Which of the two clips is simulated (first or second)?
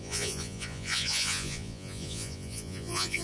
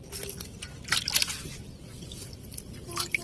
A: first